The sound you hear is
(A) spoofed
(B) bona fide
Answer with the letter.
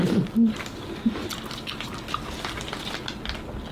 B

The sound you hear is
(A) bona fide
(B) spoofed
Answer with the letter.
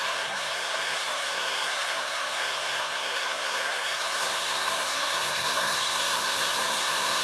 B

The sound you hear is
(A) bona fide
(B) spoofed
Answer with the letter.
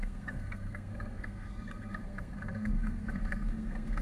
B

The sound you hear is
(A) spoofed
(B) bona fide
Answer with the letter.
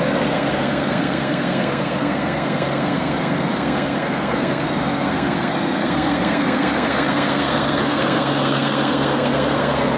A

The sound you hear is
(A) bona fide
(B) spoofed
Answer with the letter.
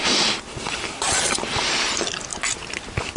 A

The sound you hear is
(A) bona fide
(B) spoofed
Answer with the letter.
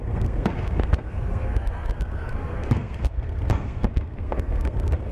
B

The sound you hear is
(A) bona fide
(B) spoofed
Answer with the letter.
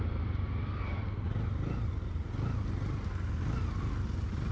A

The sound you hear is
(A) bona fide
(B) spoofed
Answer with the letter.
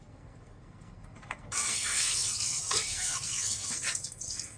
B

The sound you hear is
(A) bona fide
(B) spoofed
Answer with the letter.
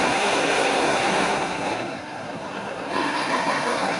B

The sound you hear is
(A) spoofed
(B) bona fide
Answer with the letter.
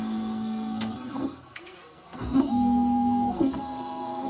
A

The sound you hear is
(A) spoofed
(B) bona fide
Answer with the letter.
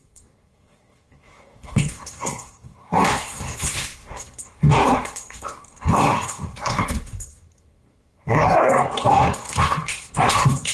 A